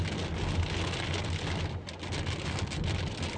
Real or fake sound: real